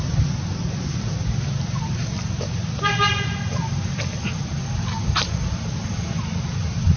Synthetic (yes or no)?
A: no